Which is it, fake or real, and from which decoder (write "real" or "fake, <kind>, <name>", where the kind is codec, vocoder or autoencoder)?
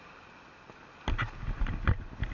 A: real